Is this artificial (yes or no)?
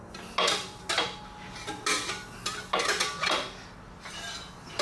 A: no